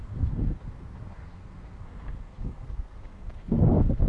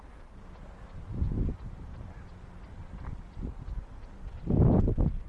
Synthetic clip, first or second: first